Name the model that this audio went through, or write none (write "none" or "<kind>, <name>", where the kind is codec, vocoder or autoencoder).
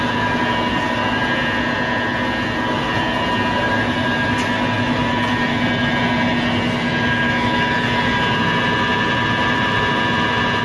none